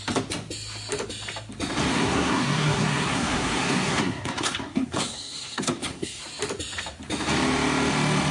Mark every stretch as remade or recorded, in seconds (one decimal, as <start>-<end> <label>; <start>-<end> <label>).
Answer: 0.0-1.9 recorded; 1.9-6.2 remade; 6.2-8.3 recorded